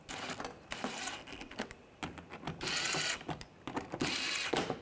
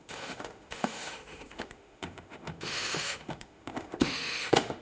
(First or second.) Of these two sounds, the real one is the first